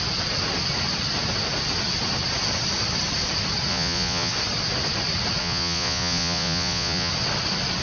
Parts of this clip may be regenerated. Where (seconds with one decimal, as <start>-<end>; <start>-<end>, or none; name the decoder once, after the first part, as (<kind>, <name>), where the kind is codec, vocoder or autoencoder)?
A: 3.7-4.3 (vocoder, Vocos); 5.4-7.1